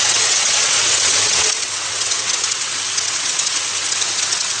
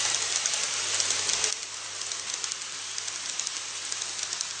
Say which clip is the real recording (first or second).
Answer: second